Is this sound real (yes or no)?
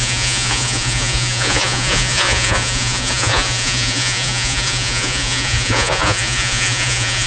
no